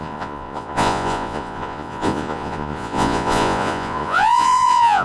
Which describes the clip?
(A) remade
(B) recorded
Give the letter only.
A